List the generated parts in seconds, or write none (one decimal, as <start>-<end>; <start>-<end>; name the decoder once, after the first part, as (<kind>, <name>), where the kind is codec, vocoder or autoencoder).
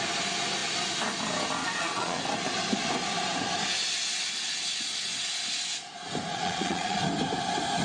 1.6-2.2 (vocoder, Vocos); 6.3-7.0